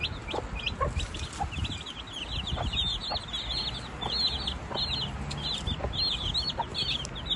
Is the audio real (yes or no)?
yes